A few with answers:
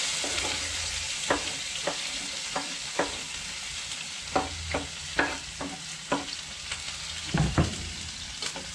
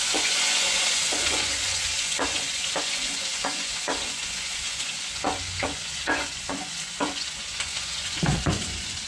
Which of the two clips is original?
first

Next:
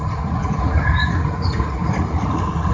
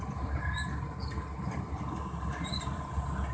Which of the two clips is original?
second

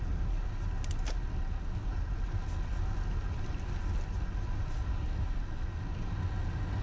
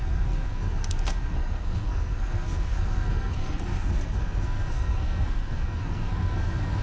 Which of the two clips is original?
first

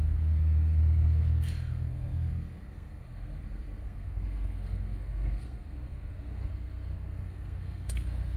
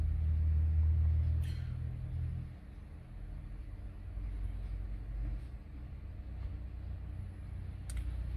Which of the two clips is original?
second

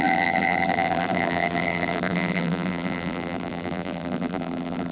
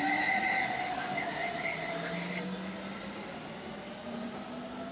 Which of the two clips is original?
second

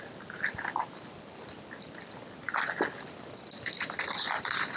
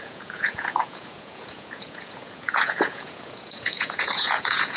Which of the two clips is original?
first